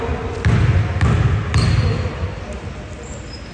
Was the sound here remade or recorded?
recorded